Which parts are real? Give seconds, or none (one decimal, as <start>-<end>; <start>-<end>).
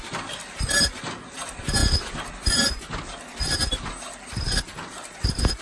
0.0-5.6